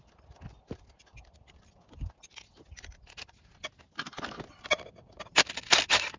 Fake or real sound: real